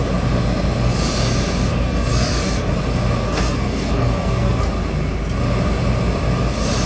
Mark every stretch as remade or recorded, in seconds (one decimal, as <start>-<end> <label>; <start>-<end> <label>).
0.0-1.7 recorded; 1.7-2.7 remade; 2.7-3.2 recorded; 3.2-4.7 remade; 4.7-6.9 recorded